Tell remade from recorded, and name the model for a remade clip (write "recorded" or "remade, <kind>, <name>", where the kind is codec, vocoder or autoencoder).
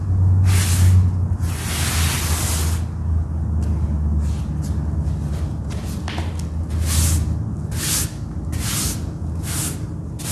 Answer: recorded